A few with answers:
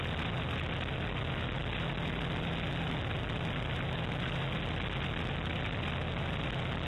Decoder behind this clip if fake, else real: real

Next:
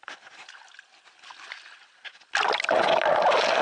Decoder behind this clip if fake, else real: real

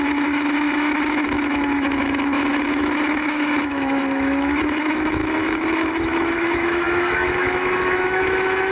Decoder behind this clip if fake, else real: fake, autoencoder, DAC-VAE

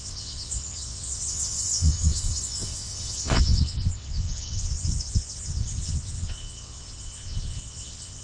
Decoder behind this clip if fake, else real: fake, vocoder, WaveNeXt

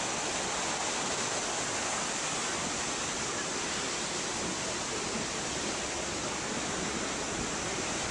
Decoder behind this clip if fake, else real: real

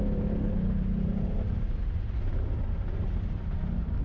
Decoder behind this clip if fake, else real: real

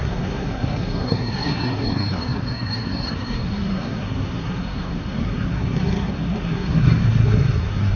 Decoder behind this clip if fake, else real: fake, codec, SNAC